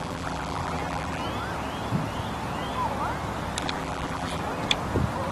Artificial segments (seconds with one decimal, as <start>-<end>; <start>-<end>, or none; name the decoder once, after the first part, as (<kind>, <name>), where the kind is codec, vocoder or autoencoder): 0.0-1.2 (vocoder, BigVGAN v2); 3.6-4.4

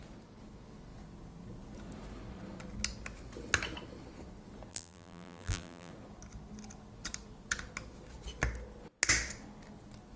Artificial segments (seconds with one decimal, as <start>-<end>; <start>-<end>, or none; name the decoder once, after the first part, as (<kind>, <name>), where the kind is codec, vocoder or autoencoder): 4.7-5.9 (vocoder, BigVGAN v2)